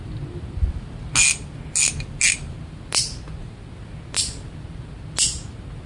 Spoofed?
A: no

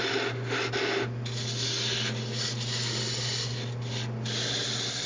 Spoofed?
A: no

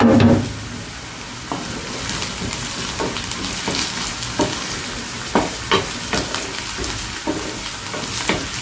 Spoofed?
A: no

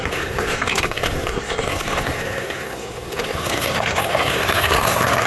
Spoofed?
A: yes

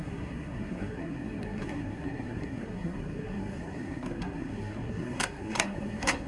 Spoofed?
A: yes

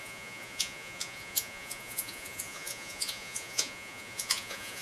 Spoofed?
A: yes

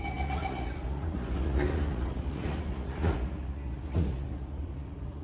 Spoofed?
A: yes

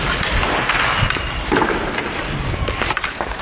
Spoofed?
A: no